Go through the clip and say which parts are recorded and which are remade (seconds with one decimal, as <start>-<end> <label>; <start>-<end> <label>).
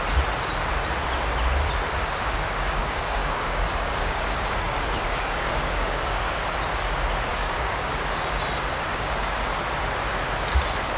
0.0-2.0 recorded; 2.0-6.4 remade; 6.4-7.3 recorded; 7.3-7.9 remade; 7.9-8.9 recorded; 8.9-9.6 remade; 9.6-11.0 recorded